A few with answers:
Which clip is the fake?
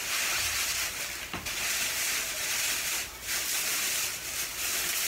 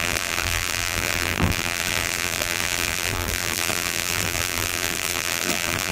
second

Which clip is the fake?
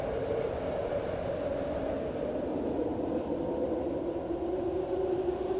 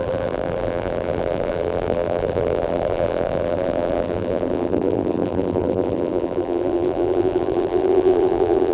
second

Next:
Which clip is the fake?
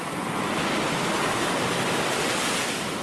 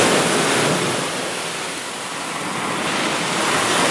first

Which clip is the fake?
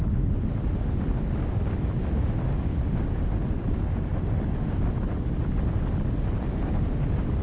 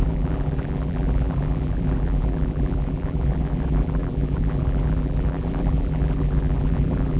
second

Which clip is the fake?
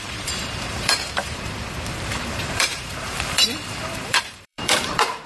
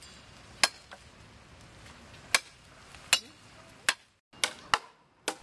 first